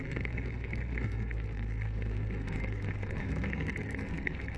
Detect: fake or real fake